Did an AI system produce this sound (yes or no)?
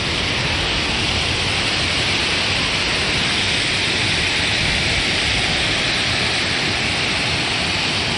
no